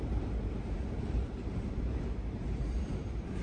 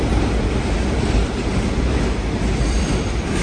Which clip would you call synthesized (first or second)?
first